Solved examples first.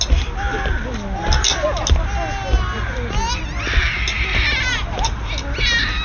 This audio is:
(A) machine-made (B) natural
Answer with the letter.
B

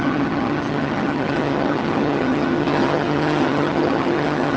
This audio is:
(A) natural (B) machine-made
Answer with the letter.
B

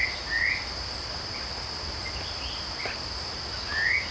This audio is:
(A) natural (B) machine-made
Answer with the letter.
A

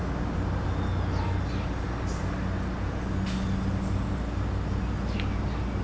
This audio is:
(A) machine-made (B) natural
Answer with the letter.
B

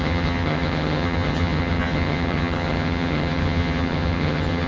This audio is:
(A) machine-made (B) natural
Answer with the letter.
A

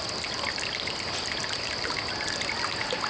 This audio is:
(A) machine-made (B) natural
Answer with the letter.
B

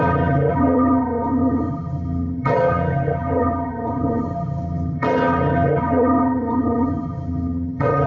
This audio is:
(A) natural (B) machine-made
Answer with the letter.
B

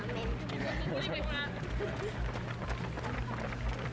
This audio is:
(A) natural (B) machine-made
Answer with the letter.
A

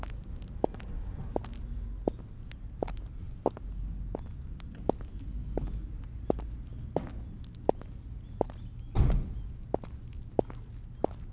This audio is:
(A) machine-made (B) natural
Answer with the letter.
B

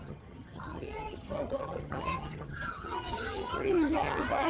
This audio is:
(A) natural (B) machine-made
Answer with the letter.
B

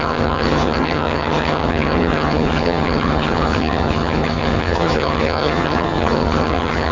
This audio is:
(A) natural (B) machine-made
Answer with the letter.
B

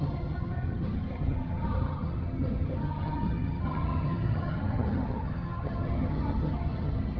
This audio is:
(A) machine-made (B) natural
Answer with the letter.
A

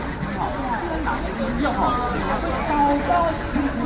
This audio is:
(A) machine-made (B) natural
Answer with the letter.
B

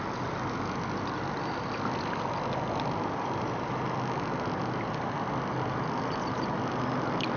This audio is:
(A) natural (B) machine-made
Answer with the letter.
A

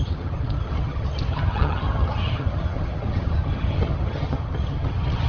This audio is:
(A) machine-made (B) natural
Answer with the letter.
A